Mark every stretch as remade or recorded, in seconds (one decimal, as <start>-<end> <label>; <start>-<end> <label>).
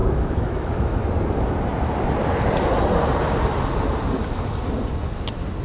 0.0-1.0 remade; 1.0-5.6 recorded